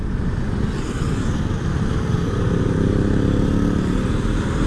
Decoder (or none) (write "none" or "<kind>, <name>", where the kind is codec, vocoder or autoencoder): none